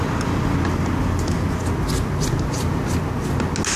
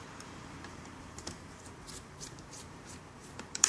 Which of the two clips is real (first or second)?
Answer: first